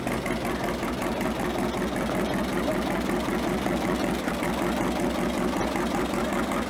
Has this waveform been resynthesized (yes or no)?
no